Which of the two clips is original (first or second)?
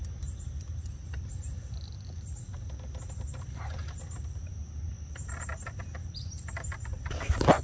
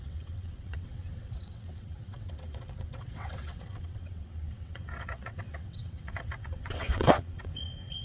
first